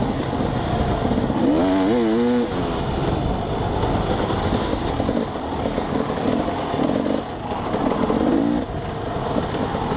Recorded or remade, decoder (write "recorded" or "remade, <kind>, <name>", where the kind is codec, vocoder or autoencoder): recorded